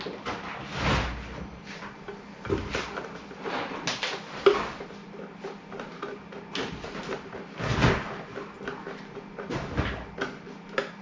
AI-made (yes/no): no